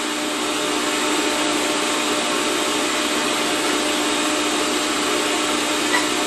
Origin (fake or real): real